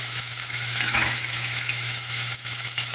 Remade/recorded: remade